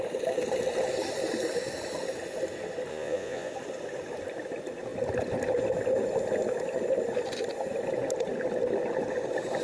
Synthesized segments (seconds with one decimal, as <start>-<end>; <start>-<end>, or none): 2.9-3.5